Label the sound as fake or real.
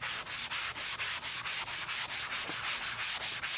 real